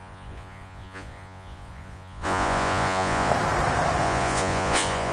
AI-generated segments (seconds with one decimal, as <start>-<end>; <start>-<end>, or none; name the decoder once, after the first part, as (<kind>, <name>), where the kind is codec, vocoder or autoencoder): 0.0-3.3 (vocoder, Vocos); 4.0-5.1